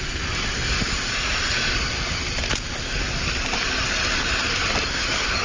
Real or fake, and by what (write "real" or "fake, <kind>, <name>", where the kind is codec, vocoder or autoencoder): real